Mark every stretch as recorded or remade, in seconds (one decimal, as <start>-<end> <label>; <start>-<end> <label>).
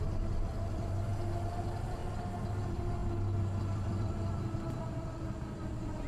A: 0.0-2.0 remade; 2.0-2.6 recorded; 2.6-3.0 remade; 3.0-3.6 recorded; 3.6-6.1 remade